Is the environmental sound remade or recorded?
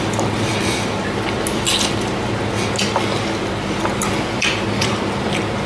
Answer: recorded